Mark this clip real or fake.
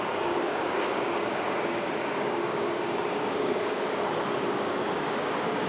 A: fake